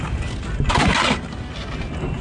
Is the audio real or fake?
real